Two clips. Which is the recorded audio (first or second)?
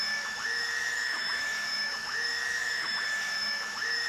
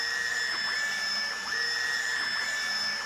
second